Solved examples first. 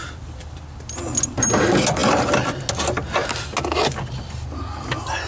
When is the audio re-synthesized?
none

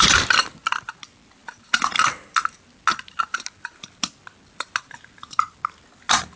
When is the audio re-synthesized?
none

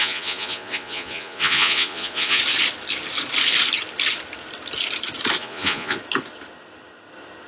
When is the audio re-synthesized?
0.0-2.4 (vocoder, Vocos); 5.4-6.0